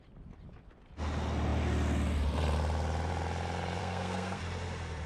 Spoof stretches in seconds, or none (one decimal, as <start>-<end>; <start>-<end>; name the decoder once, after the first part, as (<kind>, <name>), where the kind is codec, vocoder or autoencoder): 3.8-4.4 (codec, SNAC)